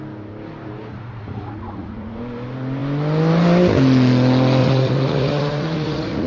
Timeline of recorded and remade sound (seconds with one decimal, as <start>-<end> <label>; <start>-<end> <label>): 0.0-0.8 recorded; 0.8-2.2 remade; 2.2-4.6 recorded; 4.6-6.3 remade